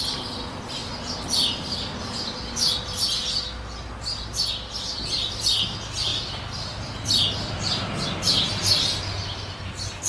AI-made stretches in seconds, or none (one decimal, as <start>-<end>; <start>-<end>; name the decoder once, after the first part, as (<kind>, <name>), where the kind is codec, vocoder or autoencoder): none

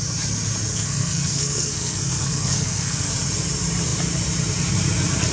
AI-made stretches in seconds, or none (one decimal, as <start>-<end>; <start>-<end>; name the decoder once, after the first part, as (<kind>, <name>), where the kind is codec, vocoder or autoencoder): 0.7-3.1 (codec, SNAC)